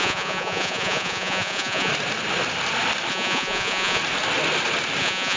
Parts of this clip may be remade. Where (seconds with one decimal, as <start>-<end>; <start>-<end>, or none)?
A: 0.0-1.9; 3.1-4.0; 5.0-5.4